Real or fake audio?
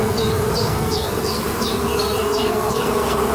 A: fake